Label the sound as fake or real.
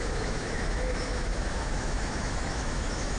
fake